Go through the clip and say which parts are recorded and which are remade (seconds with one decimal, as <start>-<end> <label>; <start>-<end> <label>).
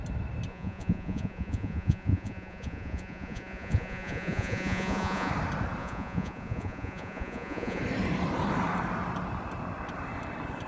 0.0-0.5 recorded; 0.5-5.3 remade; 5.3-5.8 recorded; 5.8-7.8 remade; 7.8-10.7 recorded